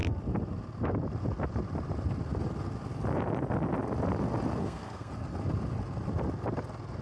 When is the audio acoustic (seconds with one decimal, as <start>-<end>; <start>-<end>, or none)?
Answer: 0.0-4.6; 5.1-7.0